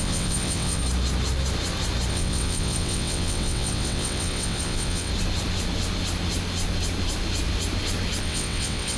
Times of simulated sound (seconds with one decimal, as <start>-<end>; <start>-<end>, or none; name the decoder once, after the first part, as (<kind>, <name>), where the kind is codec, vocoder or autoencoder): 0.0-0.8 (vocoder, WaveNeXt); 2.1-5.1; 8.2-9.0